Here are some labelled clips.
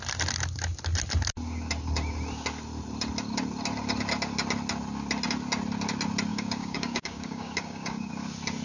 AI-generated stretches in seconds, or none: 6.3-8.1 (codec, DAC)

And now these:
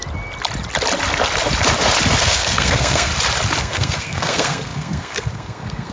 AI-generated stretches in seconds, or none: 2.2-3.1 (codec, SNAC); 3.6-5.9

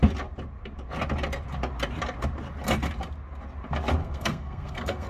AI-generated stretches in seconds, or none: 4.0-5.1 (codec, SNAC)

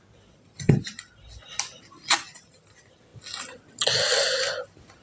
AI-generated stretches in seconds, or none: none

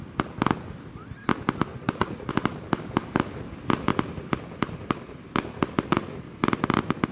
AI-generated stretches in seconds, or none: 1.7-2.3 (vocoder, Vocos)

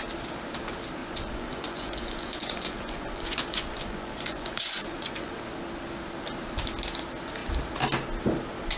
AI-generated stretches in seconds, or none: 1.0-5.4 (vocoder, Vocos)